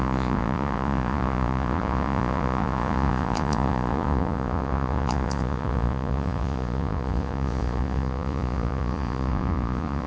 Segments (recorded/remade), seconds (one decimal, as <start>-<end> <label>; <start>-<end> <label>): 0.0-10.1 remade